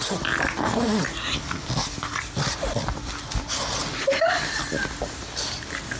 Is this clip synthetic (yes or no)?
no